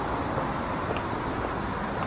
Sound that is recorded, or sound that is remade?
recorded